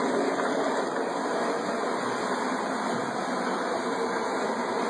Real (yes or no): yes